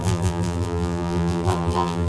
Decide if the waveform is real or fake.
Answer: fake